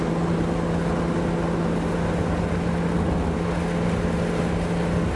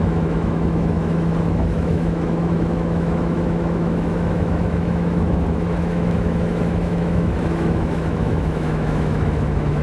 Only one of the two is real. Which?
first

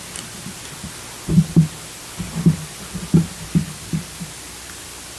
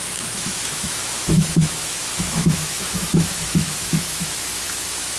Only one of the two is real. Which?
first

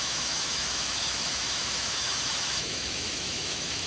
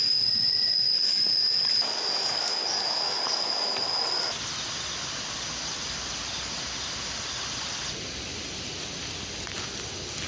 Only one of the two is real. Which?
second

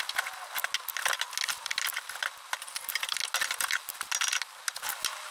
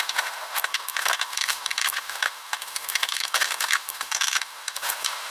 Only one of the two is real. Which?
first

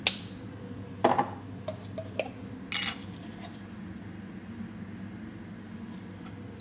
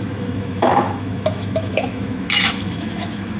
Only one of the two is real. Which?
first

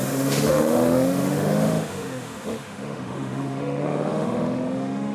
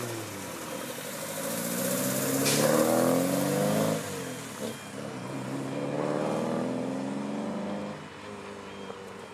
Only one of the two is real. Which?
second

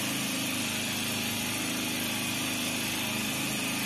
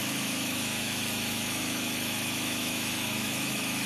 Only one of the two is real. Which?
first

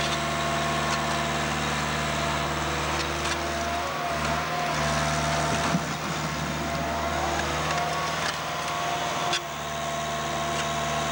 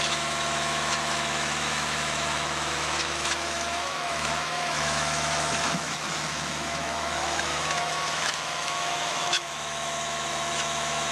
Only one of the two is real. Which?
first